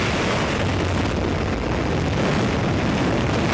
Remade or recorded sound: recorded